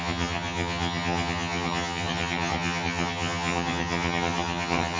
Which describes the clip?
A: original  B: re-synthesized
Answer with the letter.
B